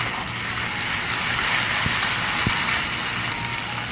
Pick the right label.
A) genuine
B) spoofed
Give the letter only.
A